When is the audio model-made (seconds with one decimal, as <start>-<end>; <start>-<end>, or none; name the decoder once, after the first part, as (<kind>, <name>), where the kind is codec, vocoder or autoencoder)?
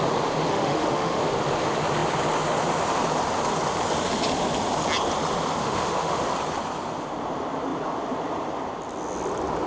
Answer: 0.5-1.2 (autoencoder, DAC-VAE); 5.6-6.2